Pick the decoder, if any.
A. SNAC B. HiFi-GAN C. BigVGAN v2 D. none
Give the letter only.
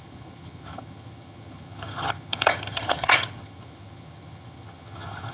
B